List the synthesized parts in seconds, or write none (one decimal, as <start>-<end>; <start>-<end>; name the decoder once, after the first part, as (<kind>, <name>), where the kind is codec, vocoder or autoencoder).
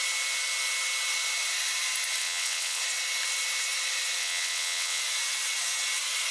2.2-2.8 (vocoder, WaveNeXt); 4.2-5.0